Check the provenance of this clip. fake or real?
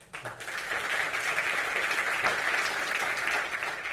real